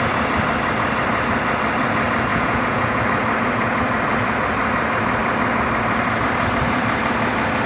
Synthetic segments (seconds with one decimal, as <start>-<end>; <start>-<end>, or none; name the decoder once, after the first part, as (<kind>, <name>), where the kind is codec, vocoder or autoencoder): 2.3-3.0 (vocoder, Vocos)